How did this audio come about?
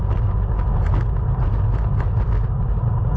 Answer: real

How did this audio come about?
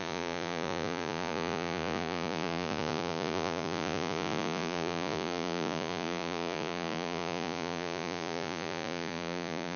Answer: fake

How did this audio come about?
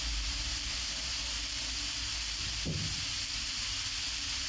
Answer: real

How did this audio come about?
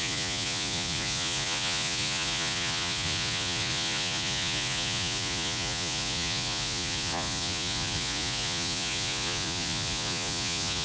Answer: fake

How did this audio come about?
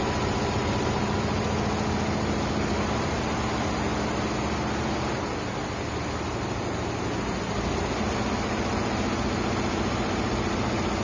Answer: real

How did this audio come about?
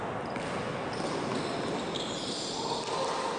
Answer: real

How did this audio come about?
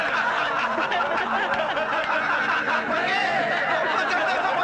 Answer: fake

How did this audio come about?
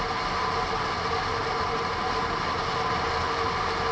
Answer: real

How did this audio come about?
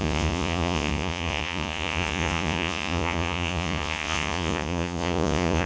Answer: fake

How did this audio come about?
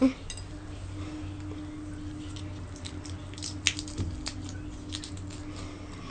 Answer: real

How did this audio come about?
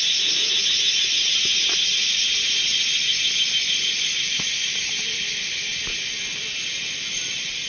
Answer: real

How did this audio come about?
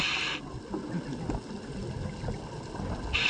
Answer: real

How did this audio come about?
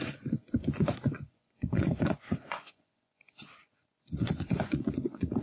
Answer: fake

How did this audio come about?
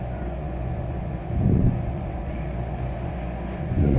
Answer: fake